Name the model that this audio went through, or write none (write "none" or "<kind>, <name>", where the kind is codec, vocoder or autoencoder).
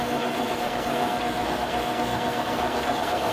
codec, SNAC